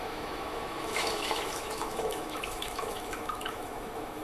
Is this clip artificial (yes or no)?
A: yes